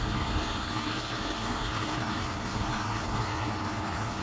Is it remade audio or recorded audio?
remade